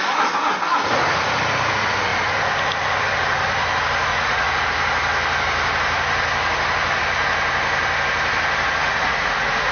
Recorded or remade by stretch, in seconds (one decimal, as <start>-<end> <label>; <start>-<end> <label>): 0.0-4.1 recorded; 4.1-4.6 remade; 4.6-8.8 recorded; 8.8-9.7 remade